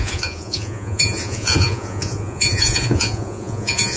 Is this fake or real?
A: fake